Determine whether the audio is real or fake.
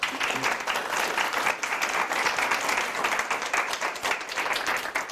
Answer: real